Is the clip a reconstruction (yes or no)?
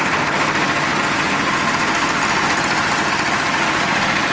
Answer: no